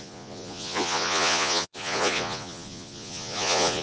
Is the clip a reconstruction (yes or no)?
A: yes